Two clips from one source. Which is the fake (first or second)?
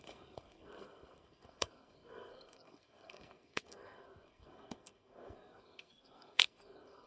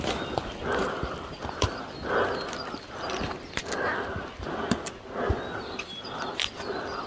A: first